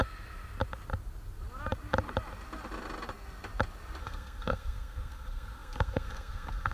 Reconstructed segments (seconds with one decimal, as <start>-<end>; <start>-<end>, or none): 4.0-6.7